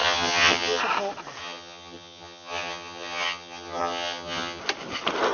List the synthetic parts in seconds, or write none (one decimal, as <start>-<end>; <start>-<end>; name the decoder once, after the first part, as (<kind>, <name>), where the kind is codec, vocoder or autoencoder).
0.0-0.8 (vocoder, HiFi-GAN); 1.4-4.6